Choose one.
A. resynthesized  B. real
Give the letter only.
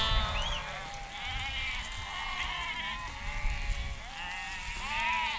B